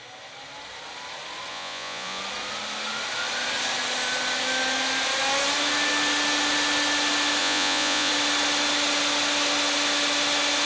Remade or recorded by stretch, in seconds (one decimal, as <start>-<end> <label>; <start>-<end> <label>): 0.0-1.5 recorded; 1.5-2.2 remade; 2.2-7.4 recorded; 7.4-8.1 remade; 8.1-10.7 recorded